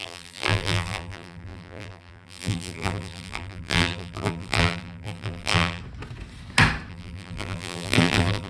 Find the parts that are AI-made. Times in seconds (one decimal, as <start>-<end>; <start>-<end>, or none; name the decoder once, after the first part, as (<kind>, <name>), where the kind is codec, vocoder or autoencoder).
0.0-5.8 (vocoder, BigVGAN v2); 6.9-8.5